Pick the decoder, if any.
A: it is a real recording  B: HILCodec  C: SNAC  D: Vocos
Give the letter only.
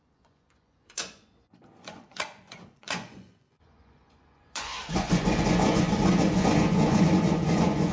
D